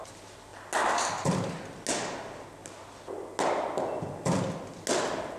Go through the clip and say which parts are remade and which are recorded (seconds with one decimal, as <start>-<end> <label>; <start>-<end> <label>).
0.0-5.4 recorded